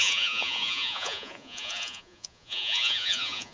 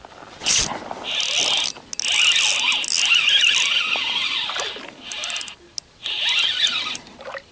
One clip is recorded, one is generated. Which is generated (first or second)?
first